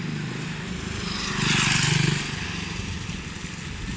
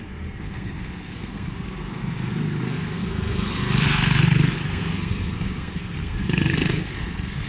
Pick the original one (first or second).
first